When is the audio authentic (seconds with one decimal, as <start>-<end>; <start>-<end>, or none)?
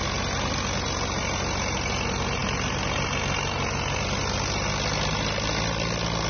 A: 0.0-6.3